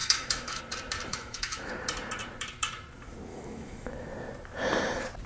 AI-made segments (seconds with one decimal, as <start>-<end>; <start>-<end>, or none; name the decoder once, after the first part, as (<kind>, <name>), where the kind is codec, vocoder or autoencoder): 0.0-0.6 (autoencoder, DAC-VAE); 1.1-1.7; 3.3-4.1